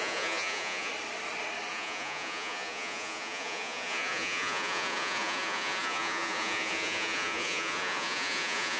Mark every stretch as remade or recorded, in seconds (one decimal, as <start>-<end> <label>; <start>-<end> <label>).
0.0-0.9 remade; 0.9-1.7 recorded; 1.7-8.8 remade